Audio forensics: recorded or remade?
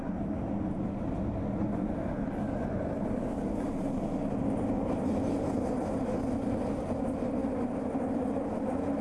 recorded